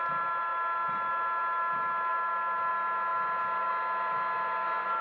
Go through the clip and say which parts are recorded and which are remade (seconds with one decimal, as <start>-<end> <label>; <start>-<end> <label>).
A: 0.0-5.0 recorded